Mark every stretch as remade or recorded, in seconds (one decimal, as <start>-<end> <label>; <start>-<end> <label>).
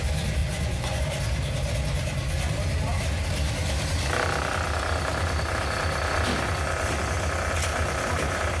0.0-0.4 recorded; 0.4-1.0 remade; 1.0-8.6 recorded